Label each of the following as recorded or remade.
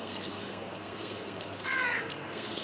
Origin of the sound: remade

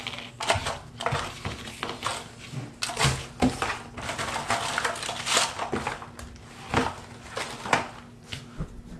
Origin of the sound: recorded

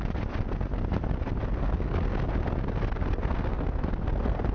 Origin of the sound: recorded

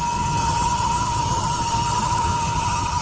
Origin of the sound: remade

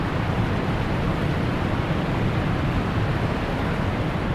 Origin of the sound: remade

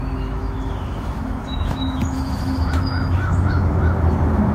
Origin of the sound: remade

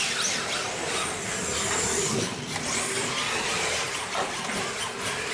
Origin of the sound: recorded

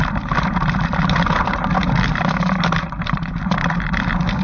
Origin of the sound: remade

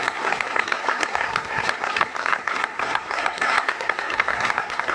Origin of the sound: remade